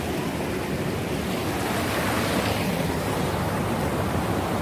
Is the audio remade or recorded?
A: recorded